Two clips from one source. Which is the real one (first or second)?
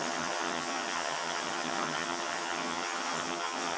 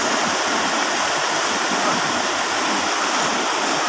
second